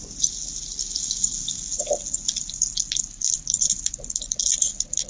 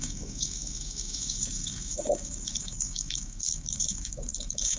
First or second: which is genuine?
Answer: first